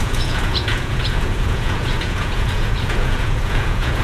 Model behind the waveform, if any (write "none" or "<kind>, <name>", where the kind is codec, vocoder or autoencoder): vocoder, Vocos